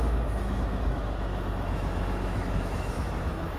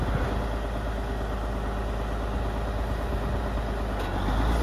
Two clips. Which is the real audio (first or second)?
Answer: second